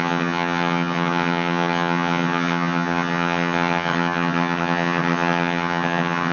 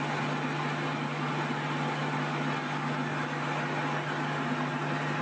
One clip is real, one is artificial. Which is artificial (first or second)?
first